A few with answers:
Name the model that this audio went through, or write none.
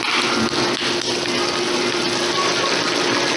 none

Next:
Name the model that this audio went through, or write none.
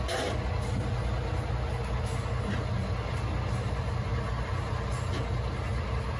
none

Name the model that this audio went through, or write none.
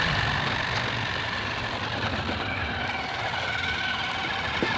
none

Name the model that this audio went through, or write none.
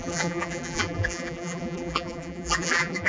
vocoder, BigVGAN v2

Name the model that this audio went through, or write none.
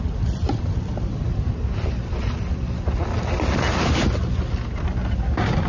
vocoder, BigVGAN v2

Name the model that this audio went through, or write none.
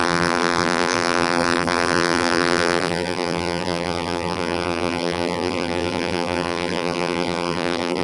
vocoder, BigVGAN v2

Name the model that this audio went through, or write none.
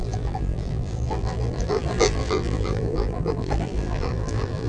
vocoder, BigVGAN v2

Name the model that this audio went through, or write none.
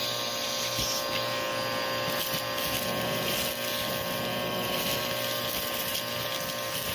none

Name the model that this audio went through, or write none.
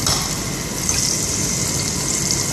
none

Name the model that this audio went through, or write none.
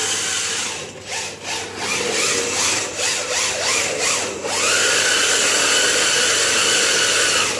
none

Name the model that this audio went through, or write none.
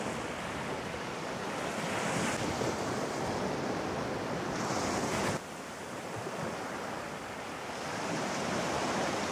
none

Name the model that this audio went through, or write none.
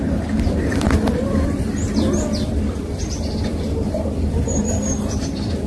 vocoder, BigVGAN v2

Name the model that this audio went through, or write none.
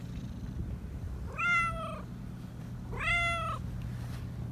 none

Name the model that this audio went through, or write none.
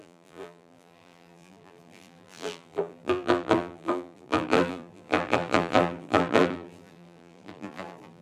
vocoder, BigVGAN v2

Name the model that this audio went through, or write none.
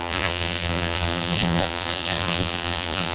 vocoder, BigVGAN v2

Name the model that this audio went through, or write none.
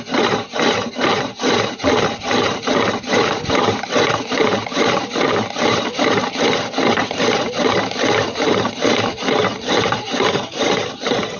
vocoder, BigVGAN v2